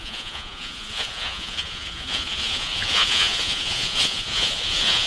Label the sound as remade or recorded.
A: remade